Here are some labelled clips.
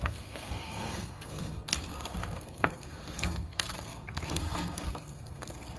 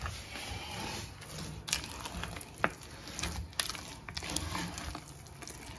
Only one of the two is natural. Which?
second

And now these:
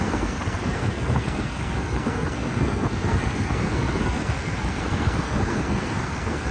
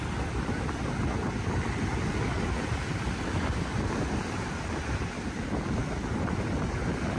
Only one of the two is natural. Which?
second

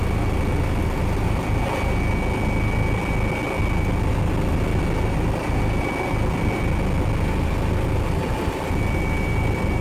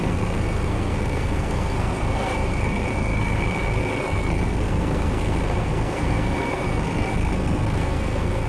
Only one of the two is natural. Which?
first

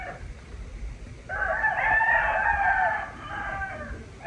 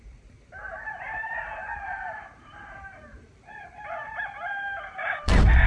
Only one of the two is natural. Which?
first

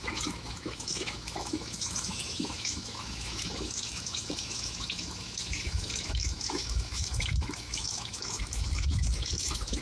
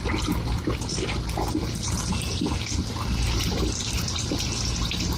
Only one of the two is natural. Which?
second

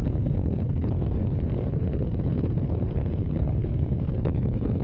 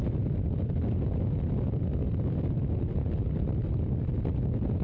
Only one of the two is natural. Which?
second